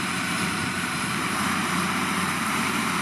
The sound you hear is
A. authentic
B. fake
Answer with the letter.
B